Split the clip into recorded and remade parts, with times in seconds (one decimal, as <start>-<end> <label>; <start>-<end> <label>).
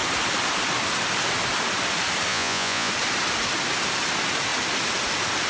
0.0-2.3 recorded; 2.3-2.9 remade; 2.9-5.5 recorded